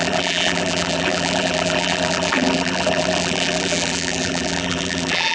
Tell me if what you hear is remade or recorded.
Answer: remade